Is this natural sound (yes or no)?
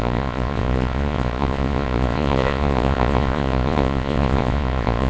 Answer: no